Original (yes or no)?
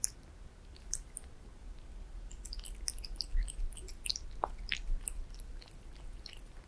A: yes